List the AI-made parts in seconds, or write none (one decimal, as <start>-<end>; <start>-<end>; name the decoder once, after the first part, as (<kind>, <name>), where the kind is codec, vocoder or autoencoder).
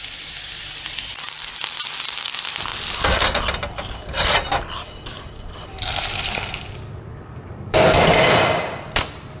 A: 0.0-2.7 (vocoder, BigVGAN v2); 6.0-9.4